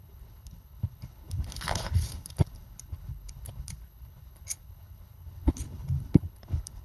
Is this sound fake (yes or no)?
yes